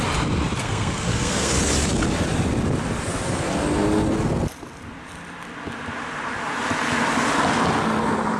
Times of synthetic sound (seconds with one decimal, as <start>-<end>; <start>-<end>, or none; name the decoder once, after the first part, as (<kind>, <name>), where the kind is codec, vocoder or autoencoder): 0.6-1.5 (codec, SNAC)